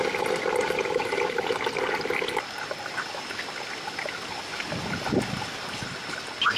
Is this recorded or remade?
recorded